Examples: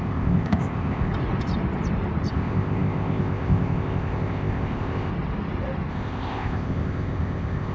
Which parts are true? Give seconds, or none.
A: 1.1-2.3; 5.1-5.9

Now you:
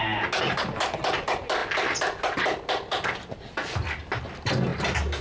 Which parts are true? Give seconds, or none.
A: 0.0-5.2

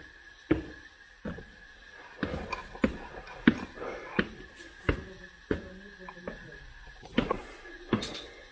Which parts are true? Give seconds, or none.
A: 0.0-8.5